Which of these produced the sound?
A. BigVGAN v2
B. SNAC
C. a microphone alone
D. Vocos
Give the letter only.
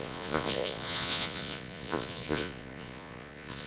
D